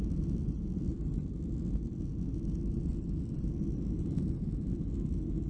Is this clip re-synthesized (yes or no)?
no